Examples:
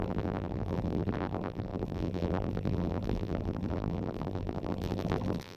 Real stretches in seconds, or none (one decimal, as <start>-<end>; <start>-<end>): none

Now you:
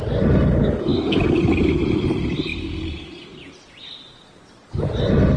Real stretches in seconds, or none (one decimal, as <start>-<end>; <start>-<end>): 0.0-5.4

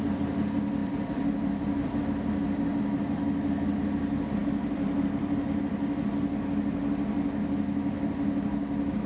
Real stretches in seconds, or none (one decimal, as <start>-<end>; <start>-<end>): 0.0-0.8; 2.0-4.4; 5.6-9.1